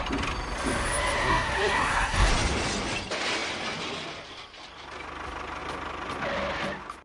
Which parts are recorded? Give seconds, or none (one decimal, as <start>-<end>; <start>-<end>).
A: 0.0-1.2; 2.3-7.0